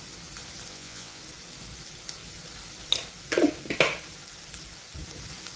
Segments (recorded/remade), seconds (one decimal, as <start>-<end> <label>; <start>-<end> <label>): 0.0-0.7 recorded; 0.7-1.2 remade; 1.2-5.6 recorded